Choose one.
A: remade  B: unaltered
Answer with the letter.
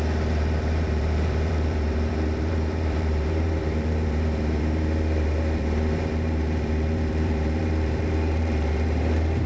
A